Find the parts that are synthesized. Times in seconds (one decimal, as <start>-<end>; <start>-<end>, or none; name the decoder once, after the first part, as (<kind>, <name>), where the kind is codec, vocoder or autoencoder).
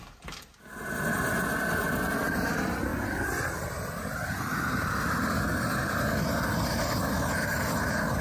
none